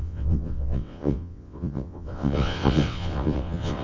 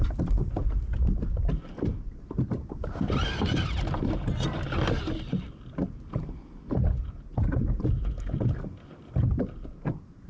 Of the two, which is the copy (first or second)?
first